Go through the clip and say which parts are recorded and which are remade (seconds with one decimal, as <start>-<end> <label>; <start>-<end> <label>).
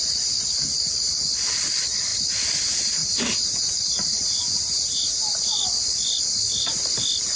0.0-3.0 recorded; 3.0-3.6 remade; 3.6-4.1 recorded; 4.1-5.0 remade; 5.0-7.4 recorded